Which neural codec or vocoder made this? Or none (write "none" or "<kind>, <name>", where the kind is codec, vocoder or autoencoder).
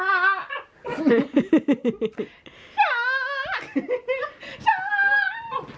none